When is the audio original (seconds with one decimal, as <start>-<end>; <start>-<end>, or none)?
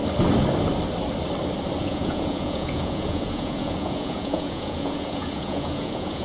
0.0-1.8